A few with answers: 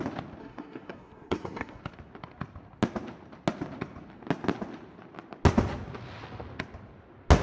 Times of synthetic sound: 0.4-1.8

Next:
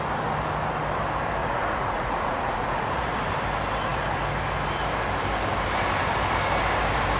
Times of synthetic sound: 1.4-3.1

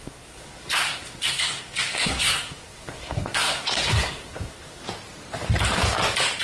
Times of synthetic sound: 0.0-4.8

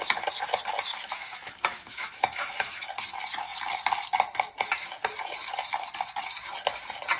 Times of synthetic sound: 0.9-2.8

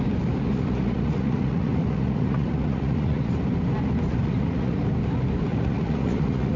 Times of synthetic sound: 0.5-3.3; 4.1-4.8; 5.5-6.6